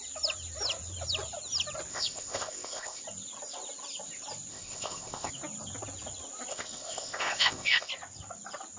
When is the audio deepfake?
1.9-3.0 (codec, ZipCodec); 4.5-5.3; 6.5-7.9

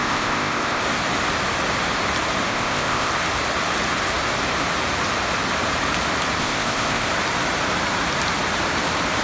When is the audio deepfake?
0.0-0.8 (codec, ZipCodec); 2.5-3.1; 6.4-7.1